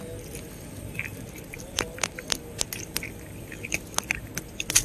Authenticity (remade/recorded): recorded